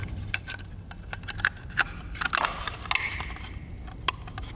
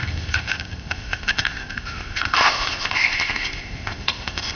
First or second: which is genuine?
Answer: first